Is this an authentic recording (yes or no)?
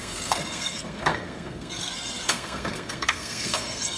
no